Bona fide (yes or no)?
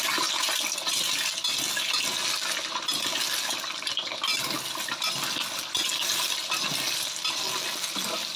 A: yes